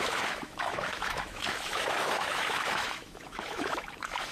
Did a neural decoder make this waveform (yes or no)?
yes